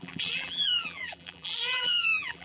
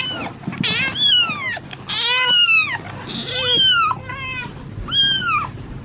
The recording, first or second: second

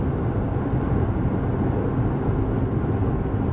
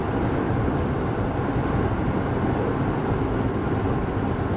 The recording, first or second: first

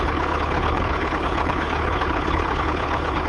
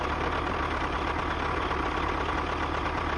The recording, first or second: second